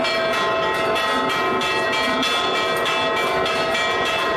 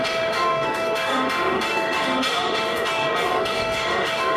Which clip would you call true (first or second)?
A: first